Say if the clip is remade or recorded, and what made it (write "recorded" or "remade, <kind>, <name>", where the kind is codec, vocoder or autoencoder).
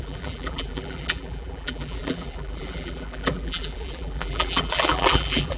remade, vocoder, BigVGAN v2